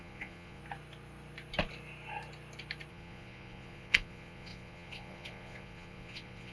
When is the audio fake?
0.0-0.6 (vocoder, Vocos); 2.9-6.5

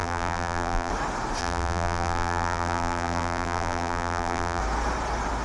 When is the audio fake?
0.0-0.9 (vocoder, BigVGAN v2); 1.4-4.6

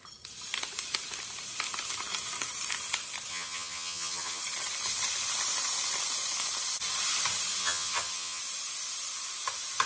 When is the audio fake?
3.3-4.4 (vocoder, HiFi-GAN); 7.6-8.4

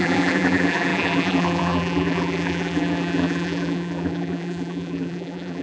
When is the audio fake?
0.0-5.6 (vocoder, BigVGAN v2)

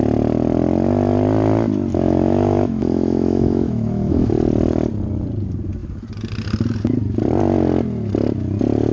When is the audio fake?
1.9-4.3 (autoencoder, DAC-VAE)

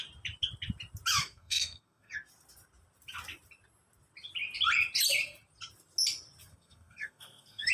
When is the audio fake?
1.2-2.1 (codec, SNAC); 6.5-7.7

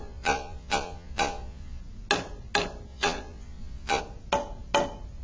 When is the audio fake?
0.0-1.8 (vocoder, Vocos); 2.9-4.0